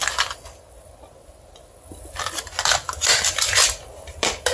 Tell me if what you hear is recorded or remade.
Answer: recorded